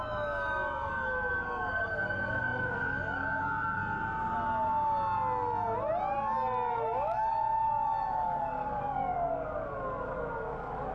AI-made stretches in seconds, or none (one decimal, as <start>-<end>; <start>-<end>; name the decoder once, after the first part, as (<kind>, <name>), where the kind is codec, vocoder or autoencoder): 0.0-3.8 (codec, DAC); 6.7-10.9